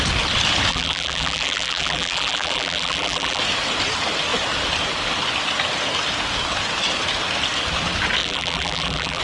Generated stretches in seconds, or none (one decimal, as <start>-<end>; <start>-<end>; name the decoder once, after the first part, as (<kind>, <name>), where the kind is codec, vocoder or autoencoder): 0.7-3.4 (vocoder, BigVGAN v2); 8.2-9.2